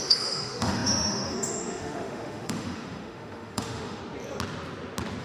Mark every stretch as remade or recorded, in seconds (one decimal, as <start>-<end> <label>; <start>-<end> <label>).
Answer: 0.0-4.0 remade; 4.0-5.2 recorded

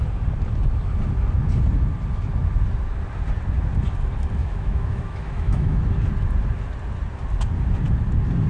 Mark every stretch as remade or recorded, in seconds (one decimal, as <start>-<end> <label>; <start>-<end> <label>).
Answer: 0.0-4.4 recorded; 4.4-5.8 remade; 5.8-8.5 recorded

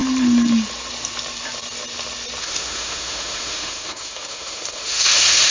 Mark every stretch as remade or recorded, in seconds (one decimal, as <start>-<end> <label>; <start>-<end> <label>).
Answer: 0.0-2.4 recorded; 2.4-5.5 remade

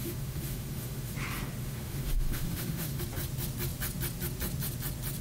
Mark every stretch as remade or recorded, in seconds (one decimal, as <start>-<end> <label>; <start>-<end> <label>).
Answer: 0.0-1.1 remade; 1.1-1.6 recorded; 1.6-3.0 remade; 3.0-5.2 recorded

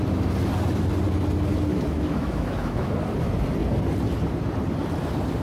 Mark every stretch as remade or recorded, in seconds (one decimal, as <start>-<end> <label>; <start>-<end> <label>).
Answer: 0.0-1.7 recorded; 1.7-2.9 remade; 2.9-5.4 recorded

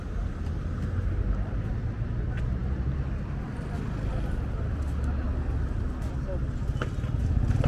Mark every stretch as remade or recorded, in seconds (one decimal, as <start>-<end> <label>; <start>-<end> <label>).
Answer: 0.0-7.7 recorded